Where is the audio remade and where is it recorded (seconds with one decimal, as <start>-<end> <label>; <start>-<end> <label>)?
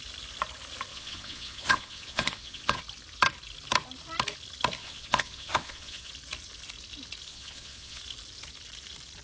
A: 0.0-0.9 recorded; 0.9-2.8 remade; 2.8-4.8 recorded; 4.8-6.1 remade; 6.1-7.3 recorded; 7.3-8.0 remade; 8.0-9.2 recorded